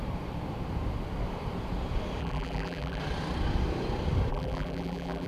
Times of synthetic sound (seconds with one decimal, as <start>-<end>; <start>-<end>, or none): 2.2-3.0; 4.3-5.3